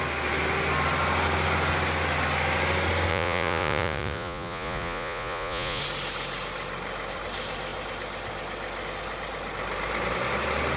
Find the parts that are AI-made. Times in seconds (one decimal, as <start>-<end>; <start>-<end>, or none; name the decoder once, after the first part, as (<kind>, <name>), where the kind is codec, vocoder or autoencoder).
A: 3.1-5.8 (vocoder, Vocos)